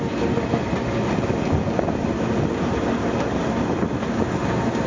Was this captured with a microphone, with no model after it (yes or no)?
yes